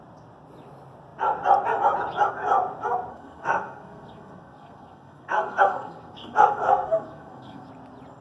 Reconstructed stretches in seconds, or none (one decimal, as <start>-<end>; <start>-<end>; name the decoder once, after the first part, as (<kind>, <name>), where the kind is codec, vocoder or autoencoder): 3.1-7.7 (codec, SNAC)